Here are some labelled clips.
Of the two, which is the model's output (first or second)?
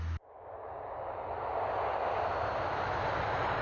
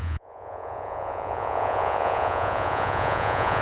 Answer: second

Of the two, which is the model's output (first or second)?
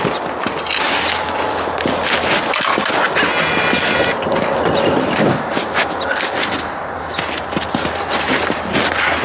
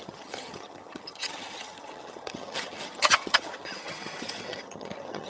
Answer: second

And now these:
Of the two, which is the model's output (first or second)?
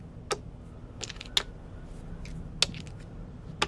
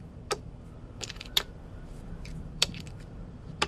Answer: second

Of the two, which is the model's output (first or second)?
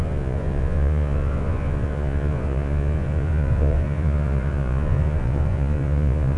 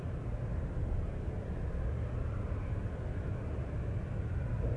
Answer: first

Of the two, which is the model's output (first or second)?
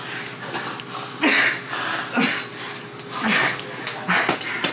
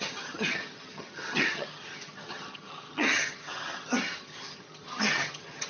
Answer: second